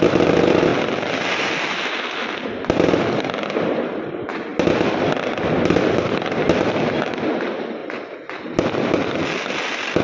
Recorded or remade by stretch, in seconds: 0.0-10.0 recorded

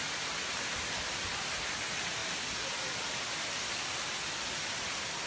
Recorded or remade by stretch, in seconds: 0.0-5.3 recorded